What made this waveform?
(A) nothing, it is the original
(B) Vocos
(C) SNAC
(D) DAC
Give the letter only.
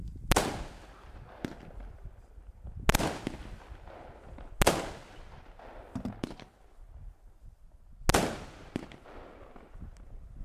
A